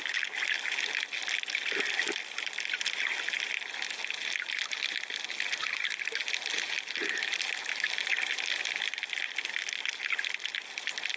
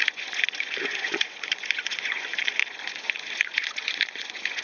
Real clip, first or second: first